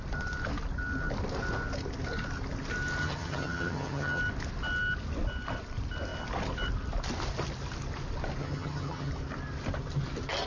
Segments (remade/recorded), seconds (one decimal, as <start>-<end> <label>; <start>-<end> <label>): 0.0-3.0 recorded; 3.0-4.2 remade; 4.2-8.4 recorded; 8.4-9.1 remade; 9.1-10.5 recorded